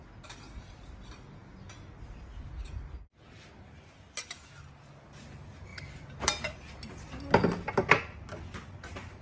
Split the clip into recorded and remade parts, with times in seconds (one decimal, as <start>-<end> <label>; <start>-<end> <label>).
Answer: 0.0-9.2 recorded